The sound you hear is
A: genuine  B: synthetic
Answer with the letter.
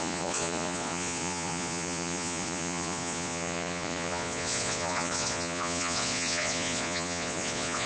B